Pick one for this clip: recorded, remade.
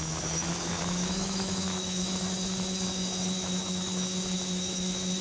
remade